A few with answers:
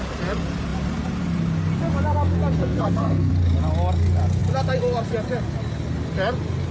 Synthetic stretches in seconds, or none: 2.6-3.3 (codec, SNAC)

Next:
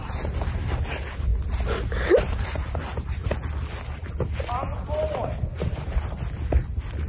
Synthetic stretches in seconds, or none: 0.0-1.3 (vocoder, BigVGAN v2); 2.2-3.2

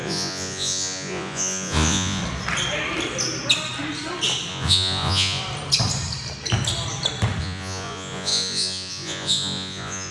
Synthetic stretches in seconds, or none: 0.0-2.2 (vocoder, Vocos); 4.5-5.4; 7.4-10.1